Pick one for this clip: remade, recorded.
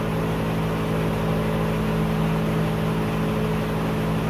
recorded